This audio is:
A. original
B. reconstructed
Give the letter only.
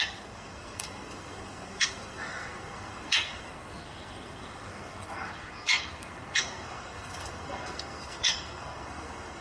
B